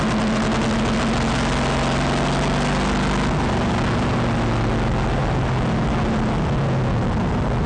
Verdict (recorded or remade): recorded